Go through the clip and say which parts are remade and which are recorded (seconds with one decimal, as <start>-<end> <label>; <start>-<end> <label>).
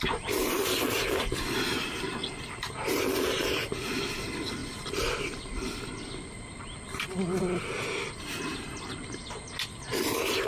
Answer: 0.0-10.5 recorded